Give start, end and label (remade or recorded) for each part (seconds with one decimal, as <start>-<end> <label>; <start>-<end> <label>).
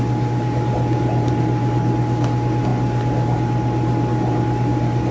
0.0-5.1 recorded